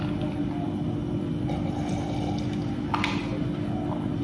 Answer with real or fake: real